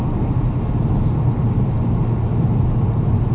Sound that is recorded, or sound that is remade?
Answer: recorded